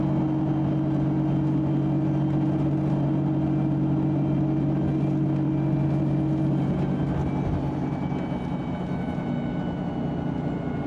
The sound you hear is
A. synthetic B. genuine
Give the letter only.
B